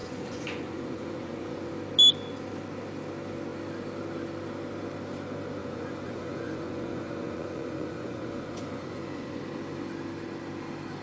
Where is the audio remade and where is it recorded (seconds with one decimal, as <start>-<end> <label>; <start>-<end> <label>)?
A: 0.0-1.7 remade; 1.7-5.6 recorded; 5.6-9.4 remade; 9.4-11.0 recorded